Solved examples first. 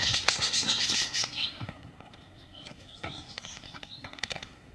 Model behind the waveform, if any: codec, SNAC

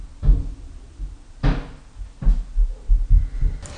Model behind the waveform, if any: none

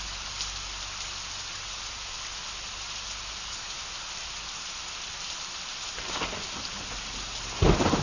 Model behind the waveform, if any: none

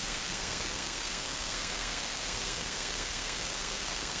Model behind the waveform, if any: codec, SNAC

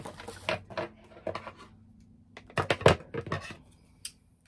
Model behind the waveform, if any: none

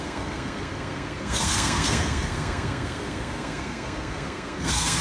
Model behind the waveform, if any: codec, SNAC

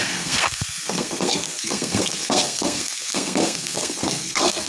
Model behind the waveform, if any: codec, SNAC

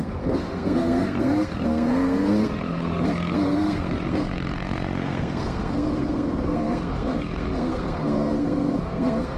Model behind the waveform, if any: codec, SNAC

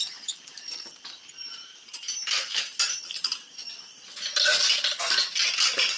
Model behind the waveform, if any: none